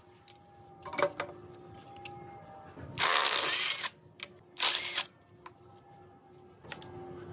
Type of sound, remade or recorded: recorded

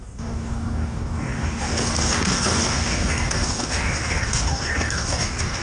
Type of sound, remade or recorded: remade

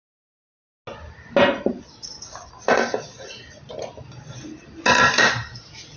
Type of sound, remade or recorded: recorded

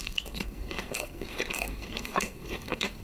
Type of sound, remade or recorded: remade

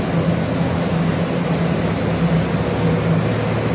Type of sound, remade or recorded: recorded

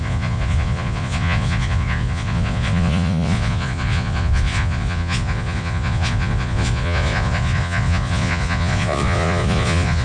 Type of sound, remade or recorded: remade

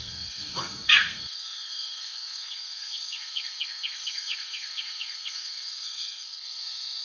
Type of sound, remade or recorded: remade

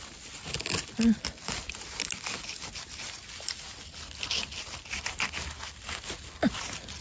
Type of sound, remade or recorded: recorded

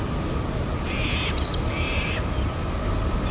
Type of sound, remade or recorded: recorded